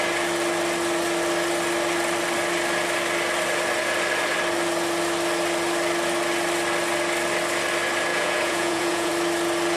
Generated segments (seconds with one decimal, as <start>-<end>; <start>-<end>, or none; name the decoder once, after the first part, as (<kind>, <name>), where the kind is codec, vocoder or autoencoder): 8.1-9.1 (vocoder, Vocos)